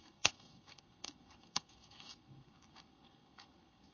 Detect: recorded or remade remade